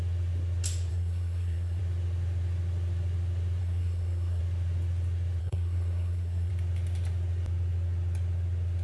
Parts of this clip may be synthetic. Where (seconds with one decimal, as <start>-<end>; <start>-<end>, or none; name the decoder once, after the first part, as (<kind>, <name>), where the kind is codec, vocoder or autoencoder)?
0.9-1.8 (codec, SNAC); 3.6-4.4; 5.4-6.5